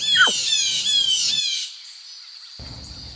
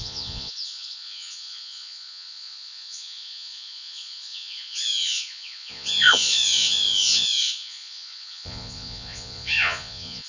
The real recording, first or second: first